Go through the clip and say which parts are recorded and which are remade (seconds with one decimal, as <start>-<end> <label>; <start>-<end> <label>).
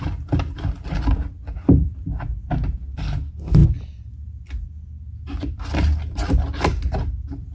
0.0-7.5 recorded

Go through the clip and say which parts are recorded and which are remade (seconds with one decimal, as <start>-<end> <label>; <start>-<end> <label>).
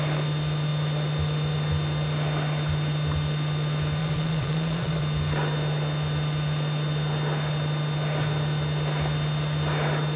0.0-4.0 recorded; 4.0-5.0 remade; 5.0-10.2 recorded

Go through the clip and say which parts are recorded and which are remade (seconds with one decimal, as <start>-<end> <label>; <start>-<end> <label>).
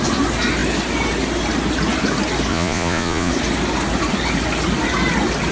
0.0-2.5 recorded; 2.5-3.3 remade; 3.3-5.5 recorded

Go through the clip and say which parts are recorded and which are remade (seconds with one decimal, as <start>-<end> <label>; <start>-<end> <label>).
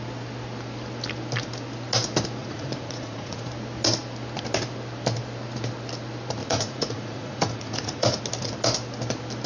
0.0-2.4 recorded; 2.4-3.5 remade; 3.5-6.4 recorded; 6.4-8.2 remade; 8.2-9.5 recorded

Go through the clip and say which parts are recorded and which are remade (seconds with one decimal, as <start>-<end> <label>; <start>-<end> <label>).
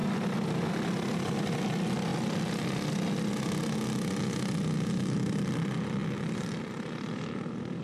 0.0-7.8 recorded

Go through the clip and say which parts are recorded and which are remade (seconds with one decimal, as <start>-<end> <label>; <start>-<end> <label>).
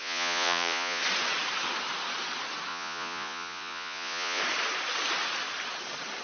0.0-1.0 remade; 1.0-2.7 recorded; 2.7-4.4 remade; 4.4-6.2 recorded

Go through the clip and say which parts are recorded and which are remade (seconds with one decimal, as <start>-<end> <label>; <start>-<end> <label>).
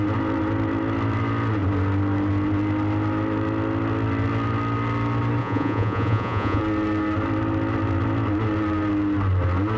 0.0-5.4 recorded; 5.4-6.6 remade; 6.6-9.8 recorded